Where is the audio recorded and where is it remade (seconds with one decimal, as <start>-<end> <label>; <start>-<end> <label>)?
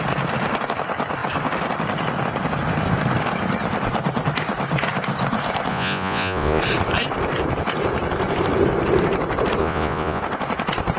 0.0-5.7 recorded; 5.7-6.6 remade; 6.6-9.6 recorded; 9.6-10.2 remade; 10.2-11.0 recorded